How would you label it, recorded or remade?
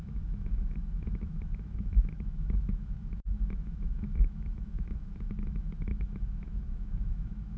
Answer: remade